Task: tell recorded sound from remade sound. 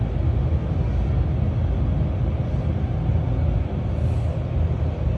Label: recorded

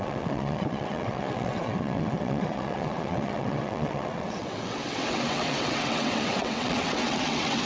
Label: remade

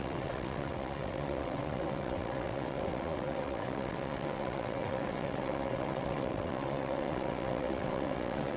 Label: remade